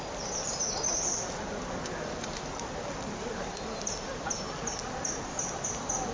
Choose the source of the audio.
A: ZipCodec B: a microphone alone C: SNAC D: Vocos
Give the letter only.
B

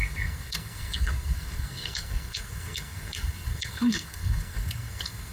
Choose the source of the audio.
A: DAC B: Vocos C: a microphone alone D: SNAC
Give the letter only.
D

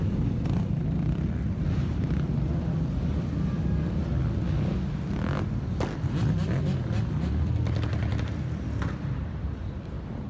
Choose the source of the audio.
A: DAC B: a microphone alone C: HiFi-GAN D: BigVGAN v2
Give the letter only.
B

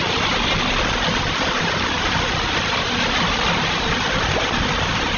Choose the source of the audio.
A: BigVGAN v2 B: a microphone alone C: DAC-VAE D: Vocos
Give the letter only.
A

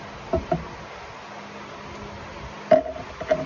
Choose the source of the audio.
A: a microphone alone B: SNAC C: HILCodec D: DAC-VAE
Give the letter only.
A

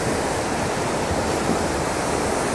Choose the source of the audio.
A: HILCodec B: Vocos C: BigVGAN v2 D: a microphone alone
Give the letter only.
C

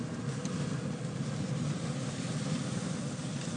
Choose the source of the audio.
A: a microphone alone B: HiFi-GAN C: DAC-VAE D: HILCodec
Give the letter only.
A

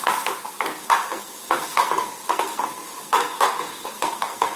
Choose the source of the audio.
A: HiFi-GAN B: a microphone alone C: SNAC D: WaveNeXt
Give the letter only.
C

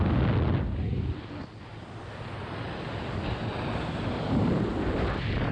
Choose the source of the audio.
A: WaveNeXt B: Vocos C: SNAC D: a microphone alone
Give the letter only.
D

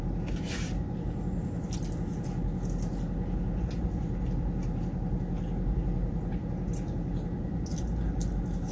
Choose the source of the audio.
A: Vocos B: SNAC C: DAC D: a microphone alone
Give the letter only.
D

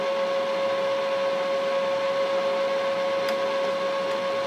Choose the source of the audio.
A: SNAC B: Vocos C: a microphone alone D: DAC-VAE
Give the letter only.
C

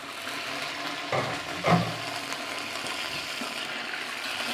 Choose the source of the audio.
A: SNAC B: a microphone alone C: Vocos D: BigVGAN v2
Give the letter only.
B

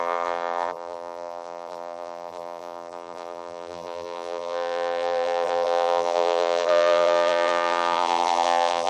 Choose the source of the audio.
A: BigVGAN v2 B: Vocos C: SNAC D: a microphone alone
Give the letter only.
A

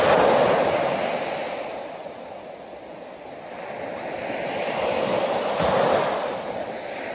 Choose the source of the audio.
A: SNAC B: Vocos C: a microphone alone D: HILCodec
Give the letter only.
C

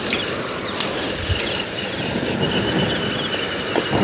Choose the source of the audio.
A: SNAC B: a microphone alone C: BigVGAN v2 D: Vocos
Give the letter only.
B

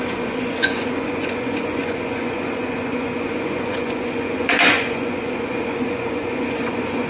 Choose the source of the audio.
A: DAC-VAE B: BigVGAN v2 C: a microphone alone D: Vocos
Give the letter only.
D